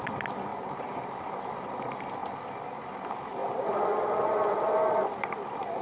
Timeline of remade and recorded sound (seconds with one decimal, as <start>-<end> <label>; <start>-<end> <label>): 0.0-0.5 recorded; 0.5-1.7 remade; 1.7-5.8 recorded